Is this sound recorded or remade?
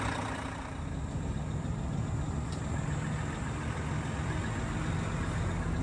recorded